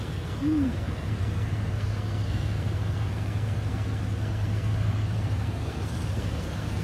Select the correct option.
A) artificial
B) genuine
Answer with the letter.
A